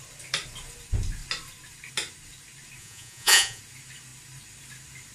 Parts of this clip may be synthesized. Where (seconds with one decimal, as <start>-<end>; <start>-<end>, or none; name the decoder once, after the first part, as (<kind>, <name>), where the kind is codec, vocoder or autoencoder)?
2.8-3.6 (vocoder, Vocos)